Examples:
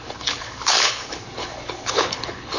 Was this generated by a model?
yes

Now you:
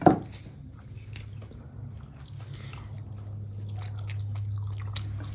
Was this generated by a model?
no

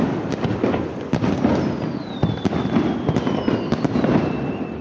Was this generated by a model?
no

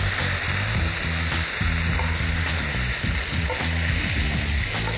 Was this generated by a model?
no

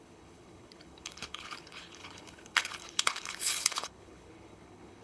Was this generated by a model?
yes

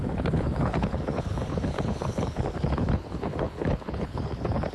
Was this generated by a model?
yes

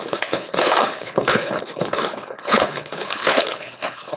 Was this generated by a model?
yes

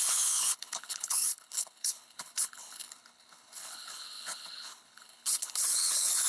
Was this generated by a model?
yes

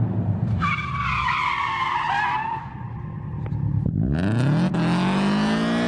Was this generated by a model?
no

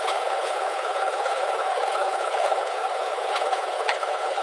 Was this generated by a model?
yes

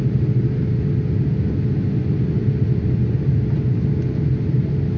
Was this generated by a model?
no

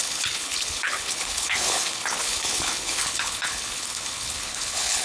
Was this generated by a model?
yes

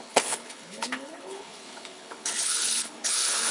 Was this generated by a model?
yes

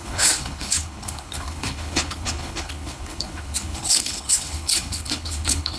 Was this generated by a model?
yes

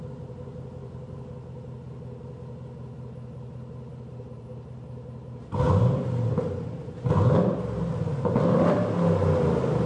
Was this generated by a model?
no